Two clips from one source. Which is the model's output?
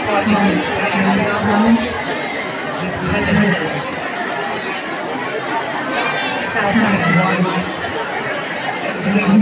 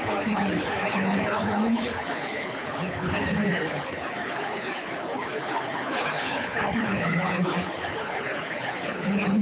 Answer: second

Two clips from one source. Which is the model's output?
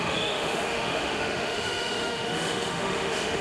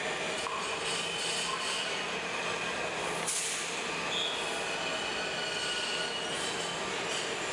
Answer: first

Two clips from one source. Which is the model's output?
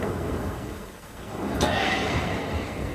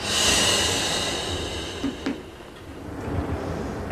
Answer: first